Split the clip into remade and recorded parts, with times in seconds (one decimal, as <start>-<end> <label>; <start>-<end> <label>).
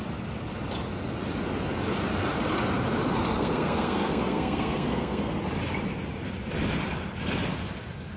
0.0-3.3 recorded; 3.3-5.4 remade; 5.4-8.2 recorded